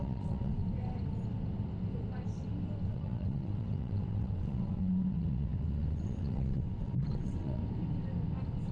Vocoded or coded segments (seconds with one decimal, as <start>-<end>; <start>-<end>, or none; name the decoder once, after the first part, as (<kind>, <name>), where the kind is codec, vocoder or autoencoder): 0.0-0.6 (vocoder, WaveNeXt); 2.9-7.6